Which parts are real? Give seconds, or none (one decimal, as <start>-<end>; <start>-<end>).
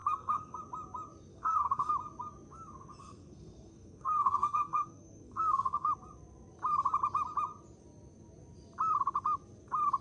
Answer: 0.6-1.3; 1.9-3.0; 5.9-10.0